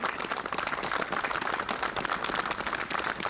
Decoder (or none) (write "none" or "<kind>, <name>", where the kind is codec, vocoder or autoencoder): none